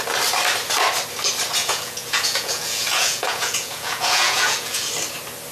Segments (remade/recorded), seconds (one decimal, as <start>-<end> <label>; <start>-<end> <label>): 0.0-1.6 recorded; 1.6-4.9 remade; 4.9-5.5 recorded